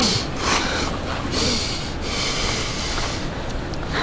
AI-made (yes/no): no